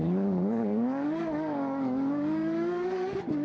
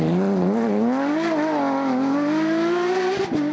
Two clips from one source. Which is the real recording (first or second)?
second